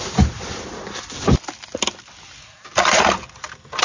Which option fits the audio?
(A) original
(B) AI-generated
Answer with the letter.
A